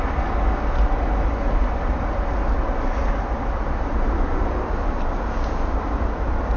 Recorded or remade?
recorded